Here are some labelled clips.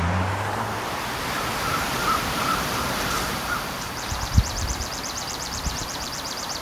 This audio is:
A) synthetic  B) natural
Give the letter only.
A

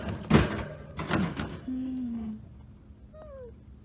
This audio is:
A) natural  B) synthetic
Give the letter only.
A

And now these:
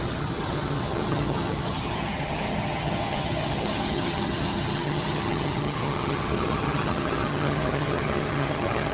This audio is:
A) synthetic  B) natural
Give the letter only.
A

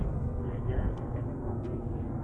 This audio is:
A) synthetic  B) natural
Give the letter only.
A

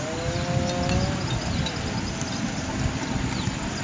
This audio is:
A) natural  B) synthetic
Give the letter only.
A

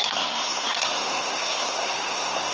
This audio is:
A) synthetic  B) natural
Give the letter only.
A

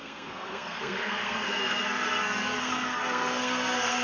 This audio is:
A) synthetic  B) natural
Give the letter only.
A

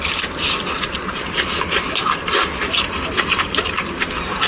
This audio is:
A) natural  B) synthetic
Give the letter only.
A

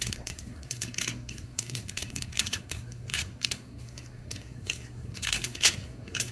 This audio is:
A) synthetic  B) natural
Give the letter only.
A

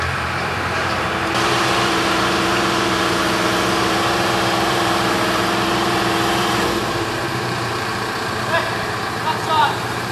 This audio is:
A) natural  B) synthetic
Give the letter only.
B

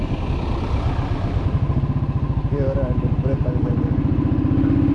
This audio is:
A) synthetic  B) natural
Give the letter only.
B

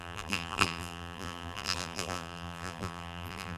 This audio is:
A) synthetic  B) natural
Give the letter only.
A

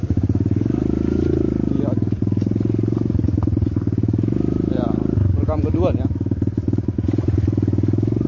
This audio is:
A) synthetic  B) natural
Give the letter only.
B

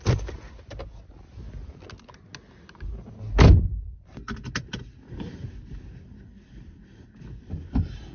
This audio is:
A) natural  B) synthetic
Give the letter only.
A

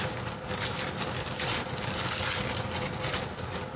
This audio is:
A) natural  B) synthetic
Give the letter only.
A